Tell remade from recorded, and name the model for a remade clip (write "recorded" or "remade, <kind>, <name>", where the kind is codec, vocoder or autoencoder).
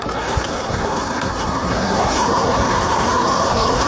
remade, codec, SNAC